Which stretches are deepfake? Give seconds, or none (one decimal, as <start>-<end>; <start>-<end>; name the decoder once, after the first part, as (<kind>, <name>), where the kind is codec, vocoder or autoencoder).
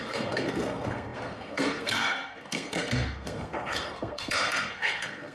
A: 0.0-5.3 (codec, SNAC)